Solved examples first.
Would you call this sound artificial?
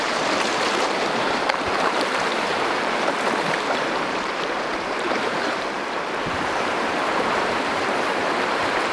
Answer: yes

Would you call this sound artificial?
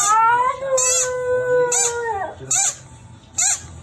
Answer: no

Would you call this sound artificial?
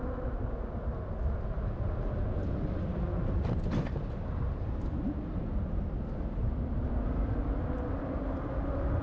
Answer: no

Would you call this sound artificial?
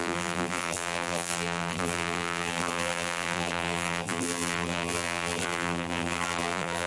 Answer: yes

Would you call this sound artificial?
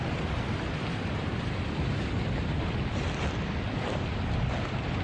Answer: no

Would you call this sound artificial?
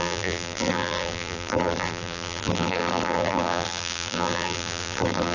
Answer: yes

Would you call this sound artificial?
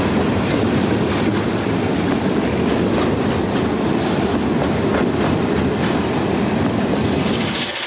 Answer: no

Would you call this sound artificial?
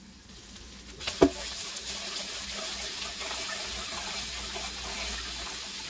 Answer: no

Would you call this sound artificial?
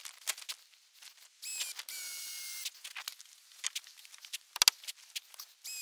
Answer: no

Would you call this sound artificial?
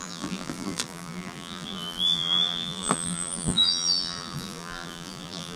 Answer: yes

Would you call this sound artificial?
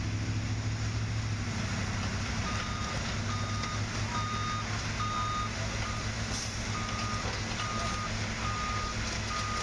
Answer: no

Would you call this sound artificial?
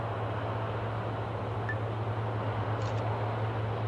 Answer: no